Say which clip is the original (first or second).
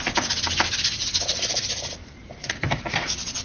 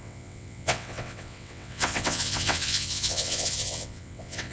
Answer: first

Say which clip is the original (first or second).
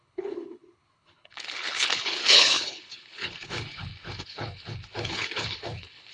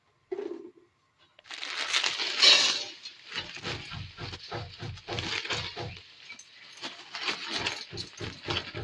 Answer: second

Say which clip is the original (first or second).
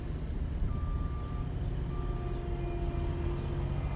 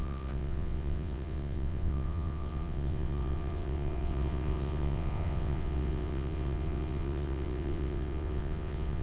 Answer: first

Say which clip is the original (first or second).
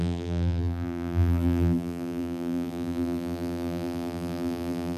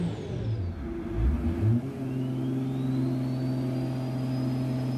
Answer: second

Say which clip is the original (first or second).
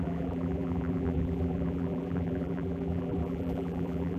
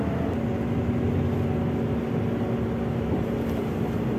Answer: second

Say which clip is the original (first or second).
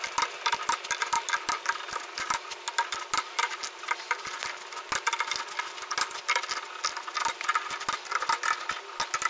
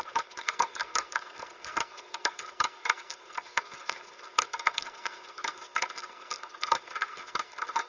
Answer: first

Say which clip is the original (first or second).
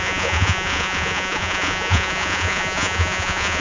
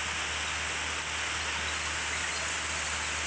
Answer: second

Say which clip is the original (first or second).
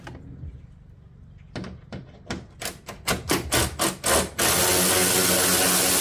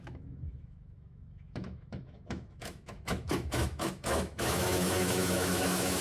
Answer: first